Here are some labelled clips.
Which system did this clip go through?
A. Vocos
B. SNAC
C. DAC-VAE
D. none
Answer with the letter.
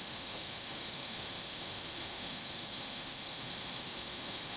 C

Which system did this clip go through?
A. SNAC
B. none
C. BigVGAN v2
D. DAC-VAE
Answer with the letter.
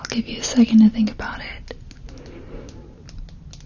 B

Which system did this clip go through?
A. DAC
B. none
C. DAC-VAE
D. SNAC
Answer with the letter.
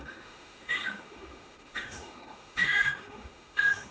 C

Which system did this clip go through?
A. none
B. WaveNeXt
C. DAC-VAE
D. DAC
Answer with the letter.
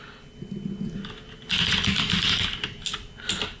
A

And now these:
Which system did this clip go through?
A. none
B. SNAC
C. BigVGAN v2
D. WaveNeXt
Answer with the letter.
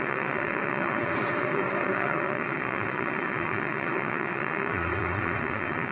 D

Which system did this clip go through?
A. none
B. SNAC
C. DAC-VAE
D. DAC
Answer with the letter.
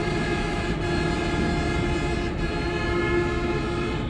A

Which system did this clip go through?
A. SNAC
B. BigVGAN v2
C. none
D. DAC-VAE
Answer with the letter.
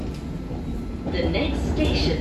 C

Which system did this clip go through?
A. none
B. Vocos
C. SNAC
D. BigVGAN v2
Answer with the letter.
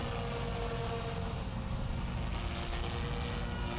A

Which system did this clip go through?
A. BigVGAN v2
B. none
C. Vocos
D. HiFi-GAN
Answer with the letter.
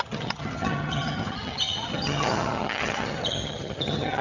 D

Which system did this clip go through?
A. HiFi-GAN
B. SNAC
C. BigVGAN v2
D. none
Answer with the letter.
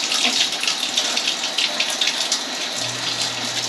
D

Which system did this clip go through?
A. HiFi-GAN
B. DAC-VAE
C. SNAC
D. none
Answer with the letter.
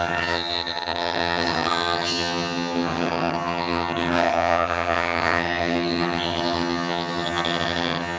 A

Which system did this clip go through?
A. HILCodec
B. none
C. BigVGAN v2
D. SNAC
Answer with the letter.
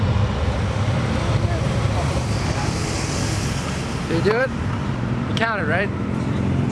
C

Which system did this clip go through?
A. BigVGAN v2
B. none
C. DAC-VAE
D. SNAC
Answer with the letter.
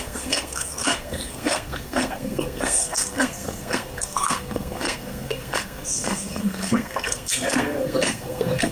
D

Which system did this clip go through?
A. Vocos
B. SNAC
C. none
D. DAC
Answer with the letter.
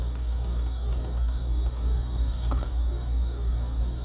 D